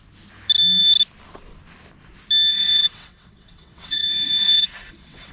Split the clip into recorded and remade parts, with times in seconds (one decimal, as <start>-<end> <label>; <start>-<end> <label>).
0.0-2.5 recorded; 2.5-5.3 remade